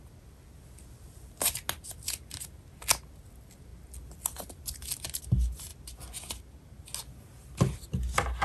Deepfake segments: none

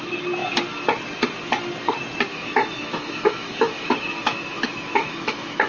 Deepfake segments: 2.3-5.7 (autoencoder, DAC-VAE)

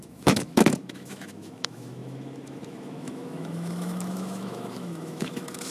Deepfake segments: 0.0-5.7 (autoencoder, DAC-VAE)

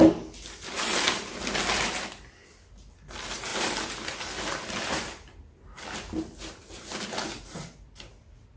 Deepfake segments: none

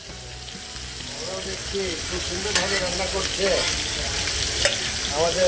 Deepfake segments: none

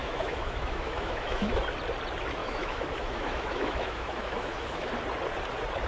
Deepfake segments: 0.0-1.6 (autoencoder, DAC-VAE); 2.4-4.9

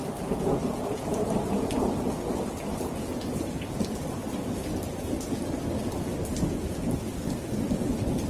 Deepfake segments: none